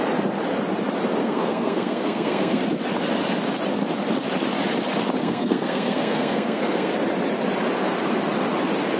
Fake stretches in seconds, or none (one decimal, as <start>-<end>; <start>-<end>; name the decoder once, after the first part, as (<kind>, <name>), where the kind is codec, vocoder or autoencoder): 1.2-2.6 (codec, SNAC); 5.2-6.9